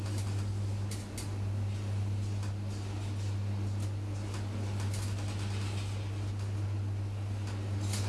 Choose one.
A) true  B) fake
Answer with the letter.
A